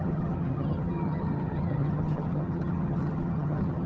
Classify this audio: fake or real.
fake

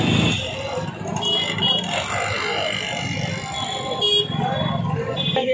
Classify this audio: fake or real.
real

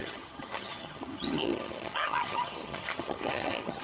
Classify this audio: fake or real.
fake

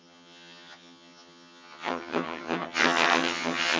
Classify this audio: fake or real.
fake